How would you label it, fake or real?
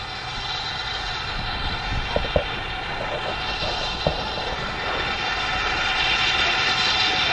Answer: real